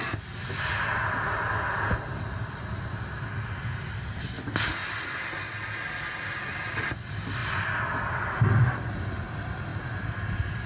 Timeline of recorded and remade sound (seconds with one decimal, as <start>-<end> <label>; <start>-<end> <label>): 0.0-10.7 recorded